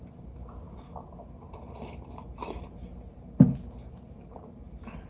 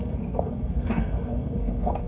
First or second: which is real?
first